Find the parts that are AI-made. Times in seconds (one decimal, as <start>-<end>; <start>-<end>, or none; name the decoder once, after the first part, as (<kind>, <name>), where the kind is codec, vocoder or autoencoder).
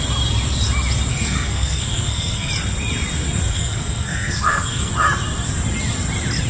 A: 1.1-2.5 (codec, SNAC); 3.5-4.9